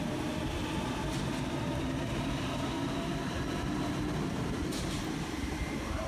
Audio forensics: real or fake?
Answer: real